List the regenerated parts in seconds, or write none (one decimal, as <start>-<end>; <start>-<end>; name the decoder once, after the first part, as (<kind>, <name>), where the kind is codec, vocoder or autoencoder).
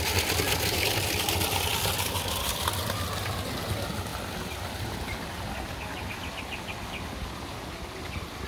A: none